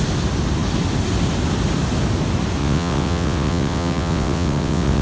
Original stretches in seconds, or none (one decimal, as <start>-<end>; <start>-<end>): 0.0-2.6